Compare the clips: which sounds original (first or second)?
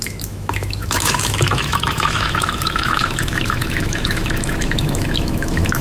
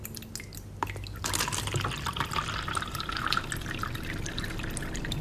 second